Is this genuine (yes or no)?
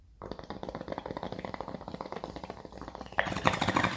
yes